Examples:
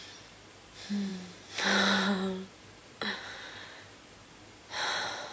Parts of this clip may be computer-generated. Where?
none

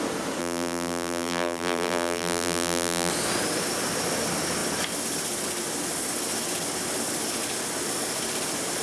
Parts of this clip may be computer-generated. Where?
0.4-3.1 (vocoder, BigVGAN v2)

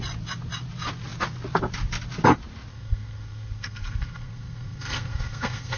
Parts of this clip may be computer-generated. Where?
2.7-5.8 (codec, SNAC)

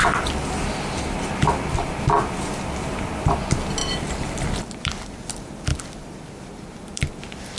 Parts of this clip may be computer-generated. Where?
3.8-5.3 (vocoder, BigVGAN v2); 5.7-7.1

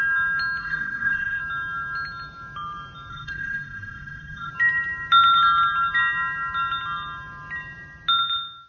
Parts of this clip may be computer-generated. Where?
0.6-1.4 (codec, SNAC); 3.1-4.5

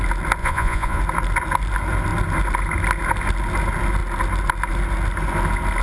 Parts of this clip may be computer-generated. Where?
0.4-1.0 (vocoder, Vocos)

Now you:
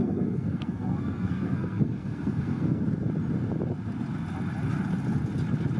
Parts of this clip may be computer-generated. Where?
0.0-2.8 (codec, SNAC)